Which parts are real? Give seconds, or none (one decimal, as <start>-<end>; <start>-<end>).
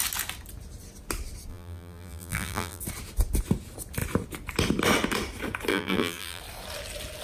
0.0-1.5; 2.8-5.7; 6.4-7.2